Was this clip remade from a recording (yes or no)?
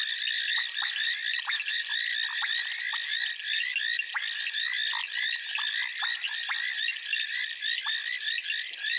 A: no